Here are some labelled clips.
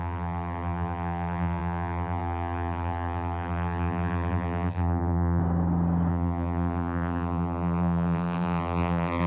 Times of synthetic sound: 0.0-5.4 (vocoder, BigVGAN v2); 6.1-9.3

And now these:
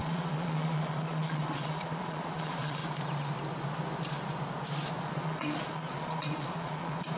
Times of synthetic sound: 0.0-2.8 (vocoder, Vocos); 5.0-7.2